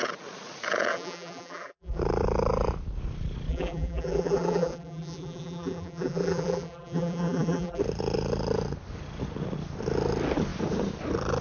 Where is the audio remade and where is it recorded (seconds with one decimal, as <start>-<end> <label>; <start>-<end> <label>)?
0.0-0.9 recorded; 0.9-2.0 remade; 2.0-3.5 recorded; 3.5-7.8 remade; 7.8-11.4 recorded